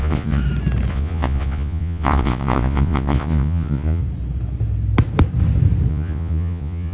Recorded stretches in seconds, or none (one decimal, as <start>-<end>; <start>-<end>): 0.4-0.9; 4.0-5.9